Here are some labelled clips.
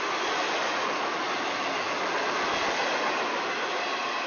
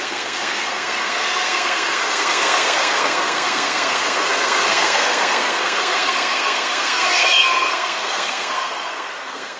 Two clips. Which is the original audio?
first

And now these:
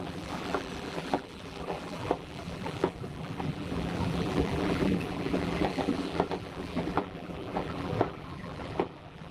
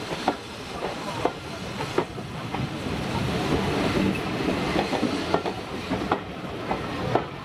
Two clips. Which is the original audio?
second